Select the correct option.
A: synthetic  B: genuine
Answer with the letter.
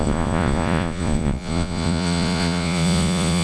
A